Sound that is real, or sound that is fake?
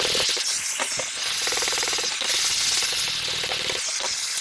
real